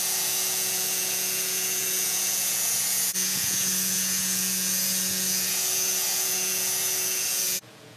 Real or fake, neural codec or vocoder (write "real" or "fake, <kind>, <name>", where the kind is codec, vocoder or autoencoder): fake, vocoder, Vocos